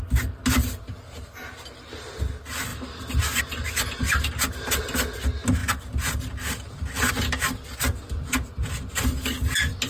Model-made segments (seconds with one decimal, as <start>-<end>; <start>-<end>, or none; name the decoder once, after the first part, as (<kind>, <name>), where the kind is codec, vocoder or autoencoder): none